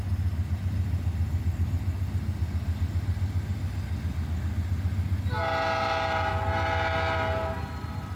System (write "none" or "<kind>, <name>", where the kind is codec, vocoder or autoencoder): none